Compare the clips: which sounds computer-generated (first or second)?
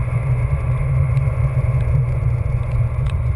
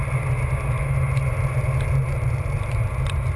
first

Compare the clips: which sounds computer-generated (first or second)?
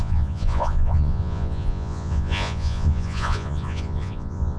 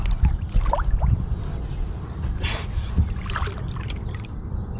first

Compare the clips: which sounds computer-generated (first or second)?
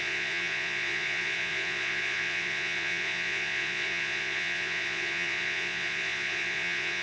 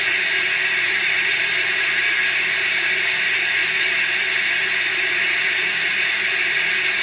first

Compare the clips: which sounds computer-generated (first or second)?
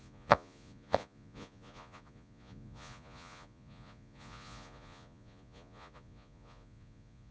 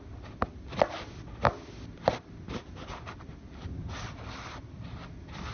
first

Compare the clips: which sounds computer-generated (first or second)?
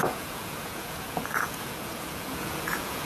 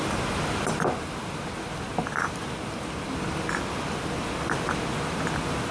first